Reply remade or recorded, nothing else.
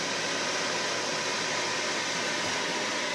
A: recorded